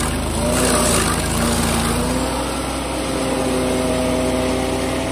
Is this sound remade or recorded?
recorded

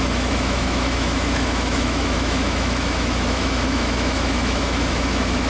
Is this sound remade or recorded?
remade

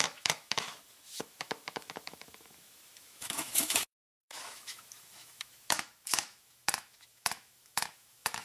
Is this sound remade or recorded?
remade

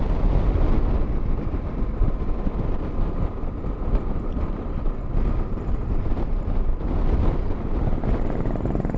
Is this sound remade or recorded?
recorded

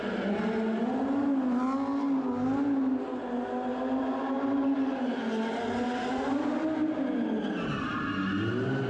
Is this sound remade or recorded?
recorded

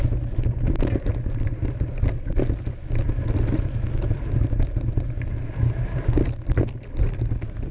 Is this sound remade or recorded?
recorded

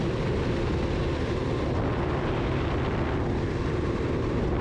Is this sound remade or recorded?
recorded